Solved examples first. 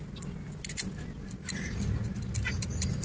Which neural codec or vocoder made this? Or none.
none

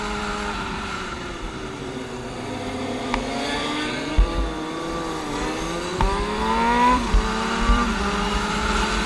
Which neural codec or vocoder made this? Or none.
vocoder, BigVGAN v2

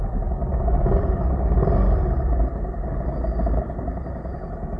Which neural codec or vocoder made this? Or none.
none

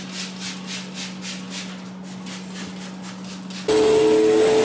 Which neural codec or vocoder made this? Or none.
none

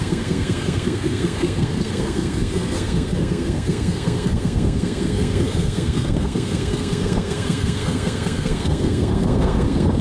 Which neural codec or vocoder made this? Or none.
codec, SNAC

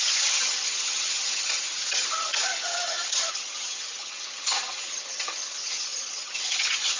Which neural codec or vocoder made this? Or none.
vocoder, HiFi-GAN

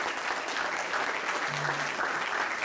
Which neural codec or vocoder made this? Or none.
none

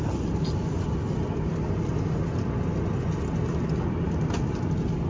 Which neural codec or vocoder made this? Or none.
none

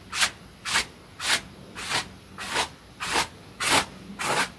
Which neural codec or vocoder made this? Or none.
none